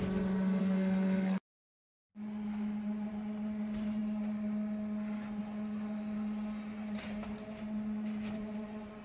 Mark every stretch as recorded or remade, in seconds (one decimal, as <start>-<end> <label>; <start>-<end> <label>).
0.0-0.6 recorded; 0.6-1.9 remade; 1.9-9.0 recorded